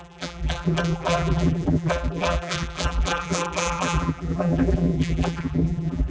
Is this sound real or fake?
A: fake